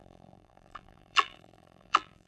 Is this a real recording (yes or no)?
no